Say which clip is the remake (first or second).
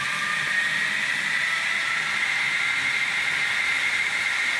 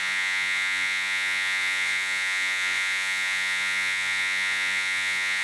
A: second